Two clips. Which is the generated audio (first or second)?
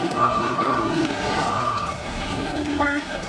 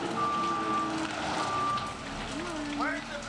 first